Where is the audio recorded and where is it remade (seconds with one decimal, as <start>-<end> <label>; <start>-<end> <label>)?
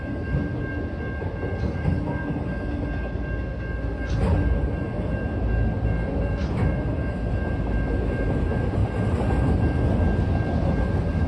0.0-11.3 recorded